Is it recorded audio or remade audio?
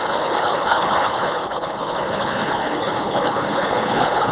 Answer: remade